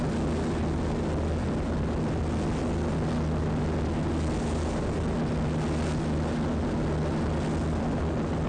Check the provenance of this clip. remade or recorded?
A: recorded